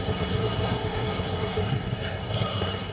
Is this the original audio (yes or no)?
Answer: no